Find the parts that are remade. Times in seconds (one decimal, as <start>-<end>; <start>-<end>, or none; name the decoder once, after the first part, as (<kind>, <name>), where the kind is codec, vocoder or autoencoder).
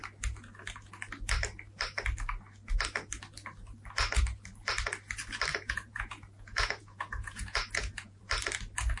5.5-8.2 (vocoder, Vocos)